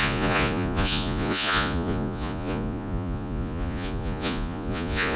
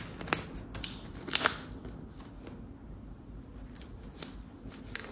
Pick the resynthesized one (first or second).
first